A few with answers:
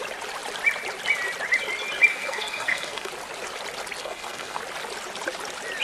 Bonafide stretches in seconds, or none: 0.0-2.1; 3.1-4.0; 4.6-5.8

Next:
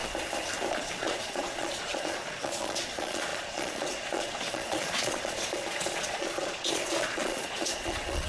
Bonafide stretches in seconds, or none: 0.0-0.7